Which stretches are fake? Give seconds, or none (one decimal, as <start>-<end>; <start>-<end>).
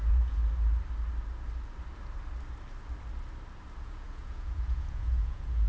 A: 0.0-0.4; 3.8-5.7